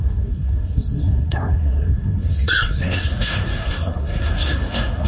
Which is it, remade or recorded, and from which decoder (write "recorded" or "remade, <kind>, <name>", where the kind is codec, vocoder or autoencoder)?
remade, codec, SNAC